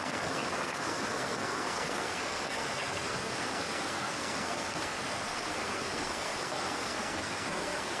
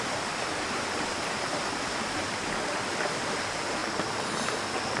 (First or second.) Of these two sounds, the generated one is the first